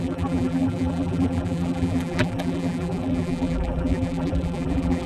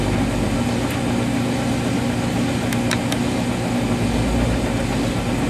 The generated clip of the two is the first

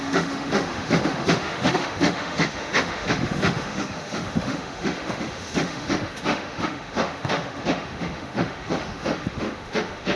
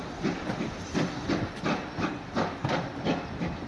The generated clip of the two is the first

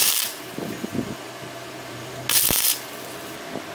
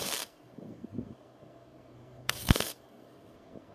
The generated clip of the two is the second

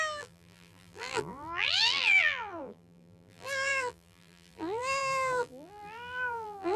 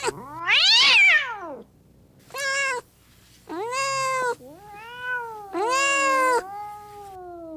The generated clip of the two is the first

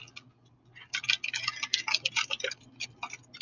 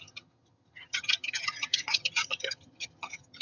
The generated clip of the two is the second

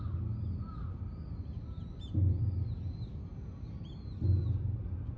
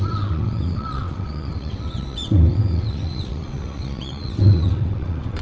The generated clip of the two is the second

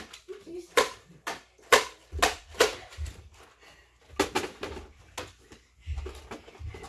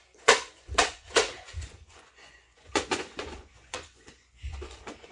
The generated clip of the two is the second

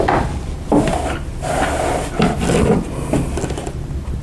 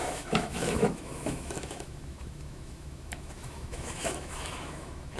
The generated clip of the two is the second